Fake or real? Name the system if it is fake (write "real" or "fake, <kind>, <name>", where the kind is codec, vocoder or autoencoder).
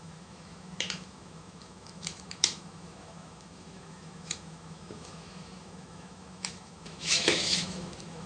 fake, autoencoder, DAC-VAE